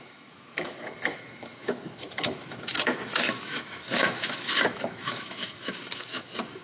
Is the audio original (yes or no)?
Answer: no